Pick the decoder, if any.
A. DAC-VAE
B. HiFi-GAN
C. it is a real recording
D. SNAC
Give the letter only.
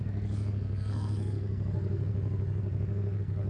D